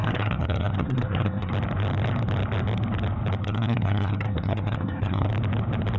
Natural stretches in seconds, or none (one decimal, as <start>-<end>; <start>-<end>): 1.5-3.4; 5.3-6.0

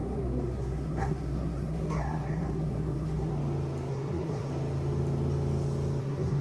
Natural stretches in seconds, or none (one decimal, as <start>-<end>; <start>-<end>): 3.3-3.9; 4.5-6.0